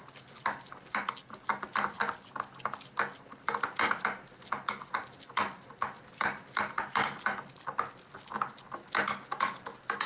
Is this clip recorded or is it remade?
recorded